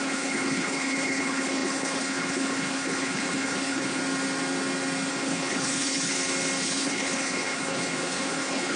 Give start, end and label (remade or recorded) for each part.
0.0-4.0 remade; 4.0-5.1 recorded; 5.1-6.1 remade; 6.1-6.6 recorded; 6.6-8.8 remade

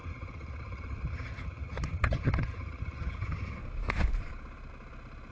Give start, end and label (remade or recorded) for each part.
0.0-3.6 remade; 3.6-5.3 recorded

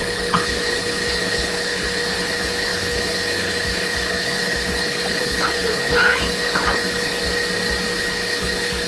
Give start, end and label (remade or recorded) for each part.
0.0-7.2 remade; 7.2-8.0 recorded; 8.0-8.9 remade

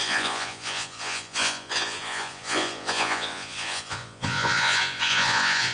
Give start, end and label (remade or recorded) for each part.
0.0-5.7 remade

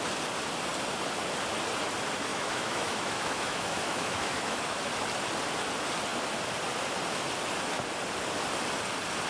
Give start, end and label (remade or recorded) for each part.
0.0-2.3 recorded; 2.3-4.9 remade; 4.9-9.3 recorded

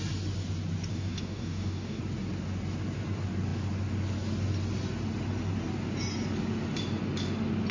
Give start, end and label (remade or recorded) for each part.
0.0-0.9 recorded; 0.9-2.0 remade; 2.0-7.7 recorded

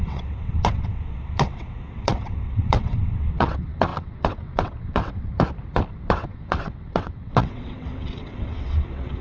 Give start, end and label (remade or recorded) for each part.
0.0-5.3 remade; 5.3-5.9 recorded; 5.9-9.2 remade

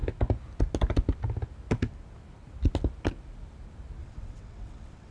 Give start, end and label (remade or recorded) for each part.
0.0-4.0 recorded; 4.0-5.1 remade